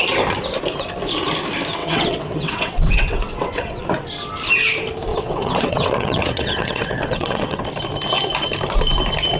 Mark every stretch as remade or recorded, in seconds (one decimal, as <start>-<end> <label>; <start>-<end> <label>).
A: 0.0-1.8 recorded; 1.8-3.8 remade; 3.8-5.1 recorded; 5.1-7.6 remade; 7.6-9.4 recorded